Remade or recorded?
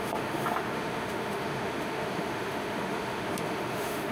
remade